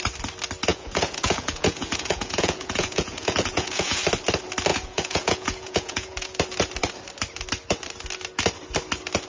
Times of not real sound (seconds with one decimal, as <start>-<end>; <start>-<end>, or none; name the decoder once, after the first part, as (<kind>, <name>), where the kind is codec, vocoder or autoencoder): 0.7-4.0 (vocoder, Vocos); 4.7-6.4